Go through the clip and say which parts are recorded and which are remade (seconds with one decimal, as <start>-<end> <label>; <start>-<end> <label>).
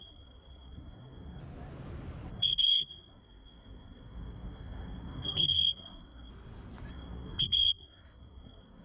0.0-1.4 remade; 1.4-2.3 recorded; 2.3-6.3 remade; 6.3-6.9 recorded; 6.9-8.8 remade